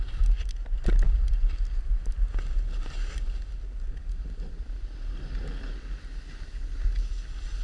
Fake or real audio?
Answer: real